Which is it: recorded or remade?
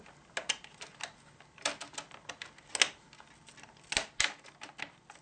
recorded